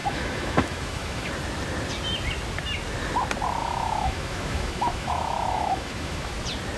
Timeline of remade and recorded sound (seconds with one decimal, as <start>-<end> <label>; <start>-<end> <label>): 0.0-1.3 remade; 1.3-3.6 recorded; 3.6-6.3 remade; 6.3-6.8 recorded